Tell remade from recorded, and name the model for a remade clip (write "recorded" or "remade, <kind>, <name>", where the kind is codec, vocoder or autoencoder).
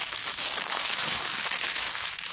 remade, autoencoder, DAC-VAE